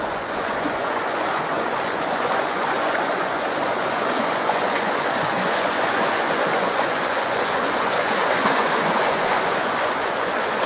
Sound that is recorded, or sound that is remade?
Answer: remade